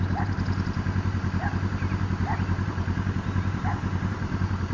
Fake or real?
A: real